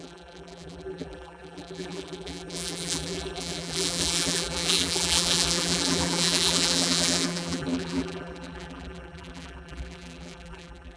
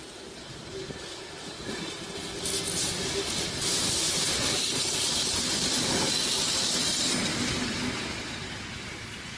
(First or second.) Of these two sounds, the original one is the second